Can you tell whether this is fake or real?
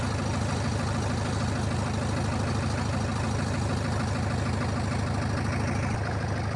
real